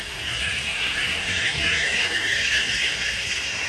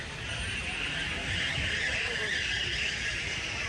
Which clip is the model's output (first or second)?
first